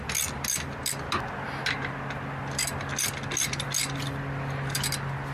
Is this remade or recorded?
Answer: recorded